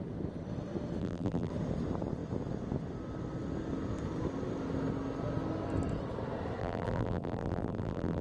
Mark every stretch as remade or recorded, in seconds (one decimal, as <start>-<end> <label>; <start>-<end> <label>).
0.0-1.0 recorded; 1.0-1.5 remade; 1.5-6.6 recorded; 6.6-8.2 remade